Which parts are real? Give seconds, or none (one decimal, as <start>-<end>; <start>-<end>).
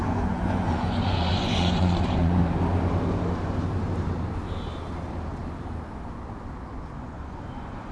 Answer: 2.4-7.0